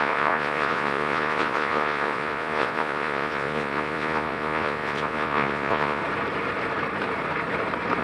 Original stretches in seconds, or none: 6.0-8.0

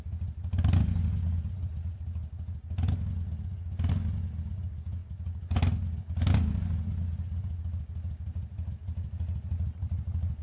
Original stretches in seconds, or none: 0.0-10.4

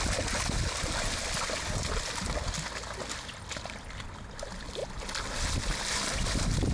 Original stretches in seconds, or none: 0.0-6.7

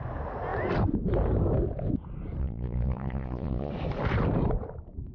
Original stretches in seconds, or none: 0.0-2.4; 3.7-5.1

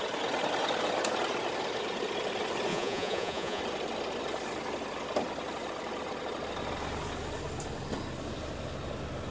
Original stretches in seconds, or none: 0.0-2.7; 3.6-9.3

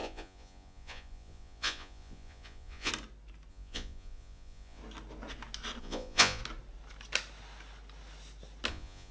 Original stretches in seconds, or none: 2.9-3.5; 4.8-5.8; 6.4-8.7

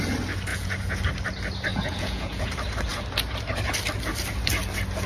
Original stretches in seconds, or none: 0.0-0.5; 1.0-1.7; 2.5-5.1